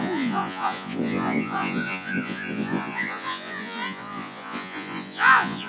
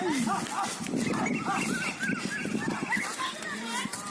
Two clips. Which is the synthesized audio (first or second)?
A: first